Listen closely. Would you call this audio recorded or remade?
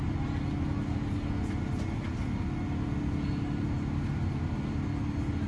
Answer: recorded